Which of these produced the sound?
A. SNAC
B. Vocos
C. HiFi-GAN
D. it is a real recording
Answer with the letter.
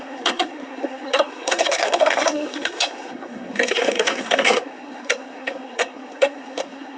A